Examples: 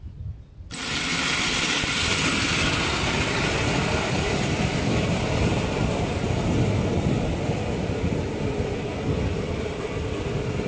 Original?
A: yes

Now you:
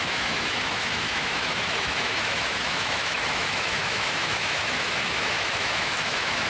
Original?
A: no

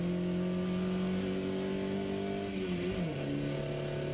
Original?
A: yes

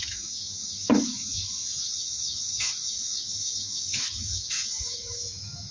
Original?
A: no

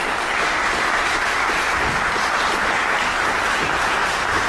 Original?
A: yes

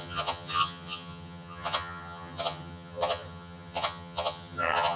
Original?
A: no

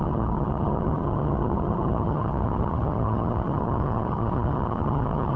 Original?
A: no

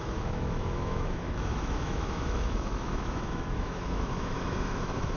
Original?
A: no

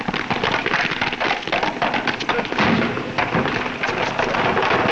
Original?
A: yes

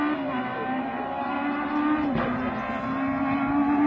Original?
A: yes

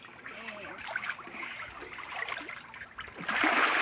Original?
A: yes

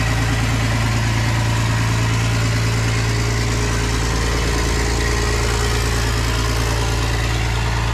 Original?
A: yes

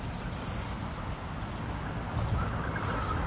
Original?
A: yes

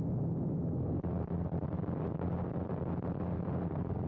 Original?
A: yes